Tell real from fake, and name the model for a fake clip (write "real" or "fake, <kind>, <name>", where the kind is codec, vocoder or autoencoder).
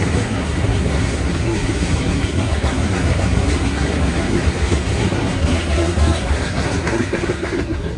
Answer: fake, codec, SNAC